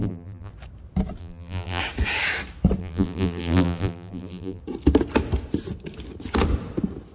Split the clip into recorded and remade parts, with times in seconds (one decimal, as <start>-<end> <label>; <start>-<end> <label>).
0.0-0.5 remade; 0.5-1.2 recorded; 1.2-1.8 remade; 1.8-2.8 recorded; 2.8-4.6 remade; 4.6-7.1 recorded